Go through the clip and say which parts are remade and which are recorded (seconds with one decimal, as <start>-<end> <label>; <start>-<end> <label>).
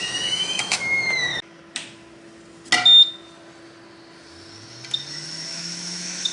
0.0-1.3 remade; 1.3-5.1 recorded; 5.1-6.3 remade